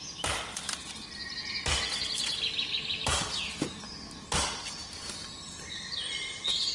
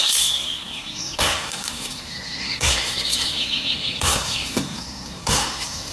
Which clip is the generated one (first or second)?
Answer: second